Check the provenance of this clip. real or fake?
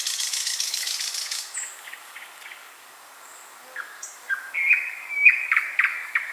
fake